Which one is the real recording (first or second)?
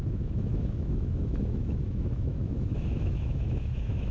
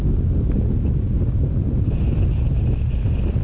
second